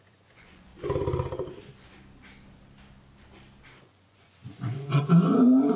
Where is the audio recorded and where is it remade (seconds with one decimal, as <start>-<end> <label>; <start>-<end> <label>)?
0.0-0.7 remade; 0.7-3.8 recorded; 3.8-5.8 remade